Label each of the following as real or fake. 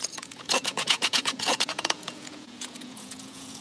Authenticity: fake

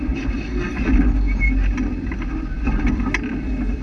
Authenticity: real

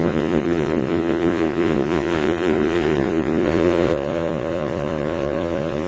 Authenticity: fake